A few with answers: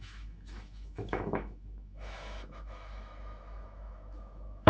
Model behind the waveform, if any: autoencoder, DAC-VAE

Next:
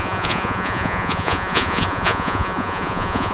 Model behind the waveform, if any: vocoder, Vocos